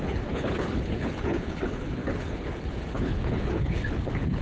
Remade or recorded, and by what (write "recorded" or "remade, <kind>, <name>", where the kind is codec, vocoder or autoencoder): remade, codec, HILCodec